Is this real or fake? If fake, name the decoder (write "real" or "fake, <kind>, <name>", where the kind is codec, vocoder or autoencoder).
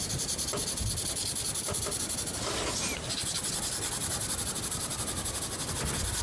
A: real